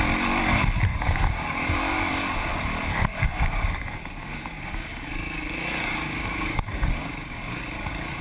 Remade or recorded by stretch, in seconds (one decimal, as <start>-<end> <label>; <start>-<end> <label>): 0.0-0.9 recorded; 0.9-2.1 remade; 2.1-3.1 recorded; 3.1-8.2 remade